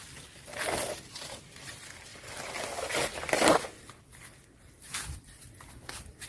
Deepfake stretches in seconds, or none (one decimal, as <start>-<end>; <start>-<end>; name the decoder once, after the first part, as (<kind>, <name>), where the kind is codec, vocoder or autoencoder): none